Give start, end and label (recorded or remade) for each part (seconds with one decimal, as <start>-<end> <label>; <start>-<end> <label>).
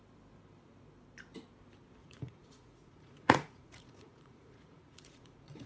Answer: 0.0-2.0 recorded; 2.0-5.7 remade